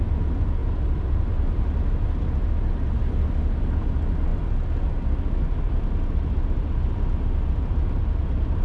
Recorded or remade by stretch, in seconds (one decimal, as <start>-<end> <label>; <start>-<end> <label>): 0.0-0.6 recorded; 0.6-1.6 remade; 1.6-8.6 recorded